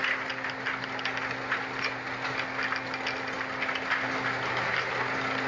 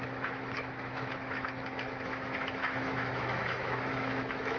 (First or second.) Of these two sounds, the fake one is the second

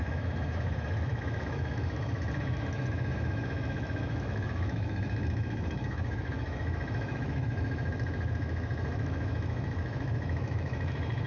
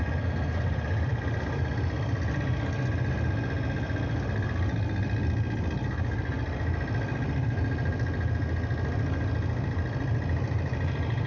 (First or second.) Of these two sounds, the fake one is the first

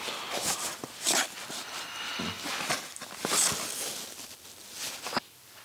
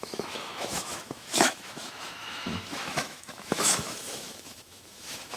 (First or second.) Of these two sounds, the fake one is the second